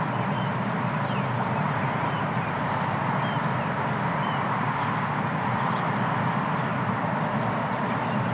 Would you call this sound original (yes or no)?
yes